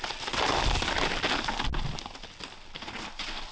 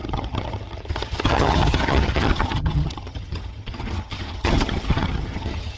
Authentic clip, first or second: first